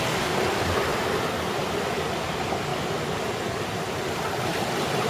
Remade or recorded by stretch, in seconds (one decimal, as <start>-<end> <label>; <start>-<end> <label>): 0.0-0.9 remade; 0.9-2.2 recorded; 2.2-2.7 remade; 2.7-3.6 recorded; 3.6-5.1 remade